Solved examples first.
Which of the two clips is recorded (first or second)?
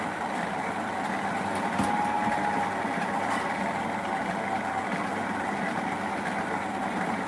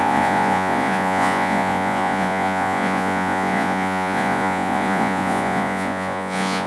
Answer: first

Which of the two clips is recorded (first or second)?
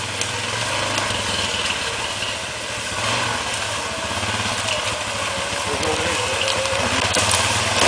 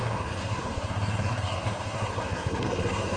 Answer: first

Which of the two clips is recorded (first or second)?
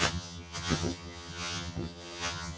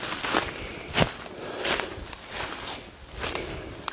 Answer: second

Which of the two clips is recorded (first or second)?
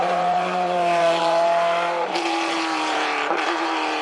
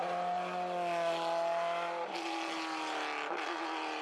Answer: second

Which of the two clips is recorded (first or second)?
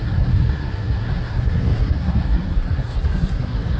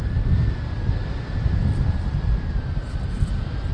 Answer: second